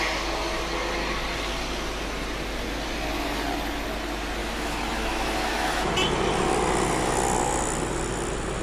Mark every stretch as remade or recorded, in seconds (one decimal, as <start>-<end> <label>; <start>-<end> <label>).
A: 0.0-4.4 recorded; 4.4-5.9 remade; 5.9-8.6 recorded